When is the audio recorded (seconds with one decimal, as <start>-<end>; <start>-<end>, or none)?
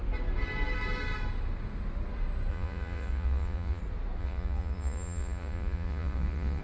0.0-2.5; 3.8-4.2